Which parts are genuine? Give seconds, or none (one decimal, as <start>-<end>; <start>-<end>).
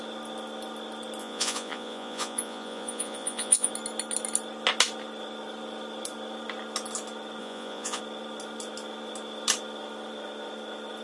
0.0-1.2; 3.7-7.4; 8.0-11.0